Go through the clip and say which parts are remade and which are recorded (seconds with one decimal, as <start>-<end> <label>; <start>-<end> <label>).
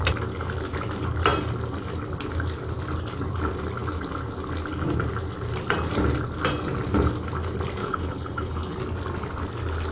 0.0-7.8 recorded; 7.8-8.8 remade; 8.8-9.9 recorded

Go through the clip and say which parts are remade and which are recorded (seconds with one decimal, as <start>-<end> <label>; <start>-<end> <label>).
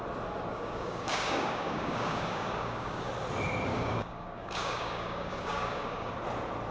0.0-0.5 recorded; 0.5-3.1 remade; 3.1-3.7 recorded; 3.7-6.1 remade; 6.1-6.7 recorded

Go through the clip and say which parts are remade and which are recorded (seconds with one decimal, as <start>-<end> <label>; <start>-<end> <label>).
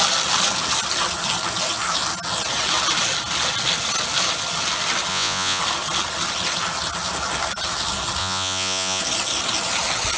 0.0-5.1 recorded; 5.1-5.6 remade; 5.6-8.2 recorded; 8.2-9.0 remade; 9.0-10.2 recorded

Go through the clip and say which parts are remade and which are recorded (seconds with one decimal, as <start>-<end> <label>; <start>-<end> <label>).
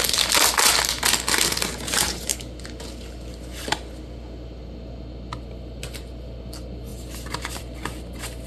0.0-8.5 recorded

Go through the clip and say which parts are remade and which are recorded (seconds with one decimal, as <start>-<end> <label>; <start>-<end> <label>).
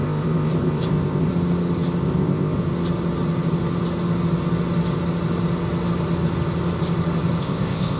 0.0-1.3 remade; 1.3-2.0 recorded; 2.0-2.6 remade; 2.6-7.4 recorded; 7.4-8.0 remade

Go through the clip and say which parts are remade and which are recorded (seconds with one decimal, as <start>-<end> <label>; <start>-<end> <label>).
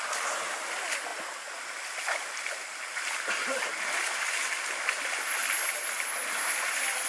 0.0-7.1 recorded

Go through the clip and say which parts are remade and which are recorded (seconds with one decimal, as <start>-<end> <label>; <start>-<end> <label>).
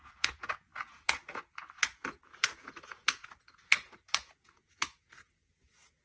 0.0-6.0 remade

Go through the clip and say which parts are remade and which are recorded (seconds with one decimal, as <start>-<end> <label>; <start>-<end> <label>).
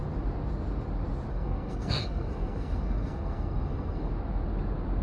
0.0-1.3 recorded; 1.3-4.1 remade; 4.1-5.0 recorded